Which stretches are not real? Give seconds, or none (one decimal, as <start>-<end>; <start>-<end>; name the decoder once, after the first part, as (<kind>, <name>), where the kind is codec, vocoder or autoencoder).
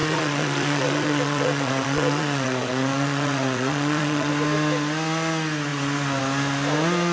0.0-4.3 (vocoder, Vocos)